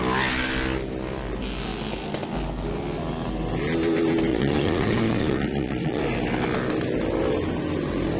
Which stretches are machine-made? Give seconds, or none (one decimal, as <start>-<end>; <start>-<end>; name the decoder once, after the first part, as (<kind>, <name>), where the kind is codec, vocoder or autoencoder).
4.3-6.0 (vocoder, Vocos)